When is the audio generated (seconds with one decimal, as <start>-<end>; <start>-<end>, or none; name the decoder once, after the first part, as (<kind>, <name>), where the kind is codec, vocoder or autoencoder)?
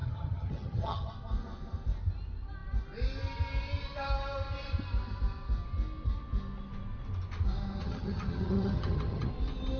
0.0-1.1 (vocoder, HiFi-GAN); 7.8-9.3